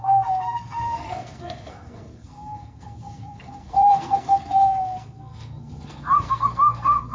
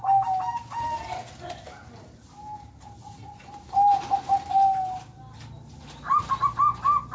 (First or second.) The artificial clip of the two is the first